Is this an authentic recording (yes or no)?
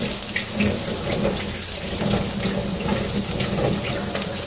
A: yes